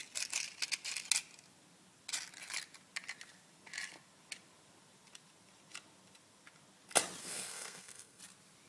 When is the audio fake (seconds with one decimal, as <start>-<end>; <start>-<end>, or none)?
7.2-8.2